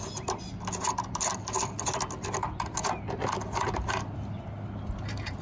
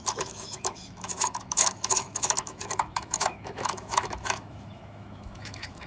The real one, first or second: first